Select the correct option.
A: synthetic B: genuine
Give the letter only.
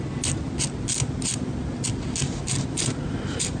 B